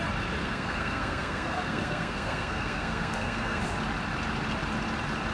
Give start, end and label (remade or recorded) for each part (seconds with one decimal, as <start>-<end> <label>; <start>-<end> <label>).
0.0-0.4 recorded; 0.4-3.6 remade; 3.6-5.3 recorded